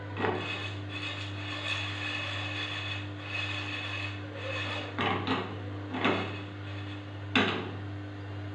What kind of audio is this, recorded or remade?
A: recorded